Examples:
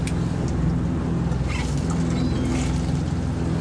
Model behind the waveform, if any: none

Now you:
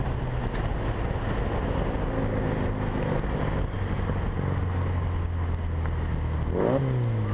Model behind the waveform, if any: none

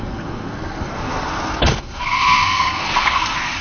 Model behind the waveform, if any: codec, SNAC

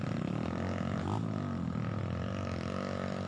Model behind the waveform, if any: none